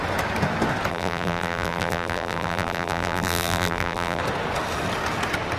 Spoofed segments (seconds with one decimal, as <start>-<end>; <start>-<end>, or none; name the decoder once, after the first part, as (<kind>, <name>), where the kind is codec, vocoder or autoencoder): 0.9-4.2 (vocoder, BigVGAN v2)